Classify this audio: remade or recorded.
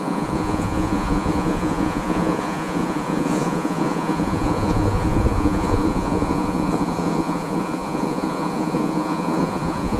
remade